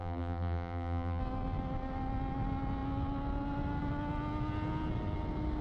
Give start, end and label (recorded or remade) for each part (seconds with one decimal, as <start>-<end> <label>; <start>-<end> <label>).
0.0-1.2 remade; 1.2-5.6 recorded